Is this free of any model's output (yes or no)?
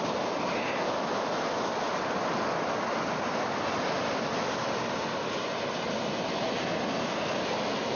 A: yes